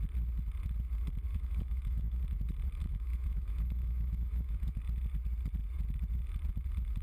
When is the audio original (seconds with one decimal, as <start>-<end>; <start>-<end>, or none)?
0.0-1.3; 2.2-2.8; 4.8-7.0